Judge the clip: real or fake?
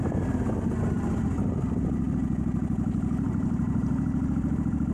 real